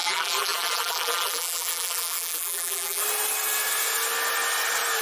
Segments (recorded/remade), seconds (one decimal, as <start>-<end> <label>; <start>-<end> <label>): 0.0-3.0 remade; 3.0-5.0 recorded